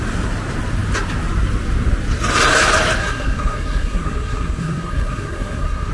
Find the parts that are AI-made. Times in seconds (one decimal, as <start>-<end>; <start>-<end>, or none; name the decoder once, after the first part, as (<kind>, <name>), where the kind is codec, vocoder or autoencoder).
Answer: 3.0-5.9 (codec, SNAC)